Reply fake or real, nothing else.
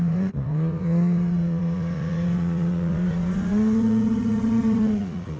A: fake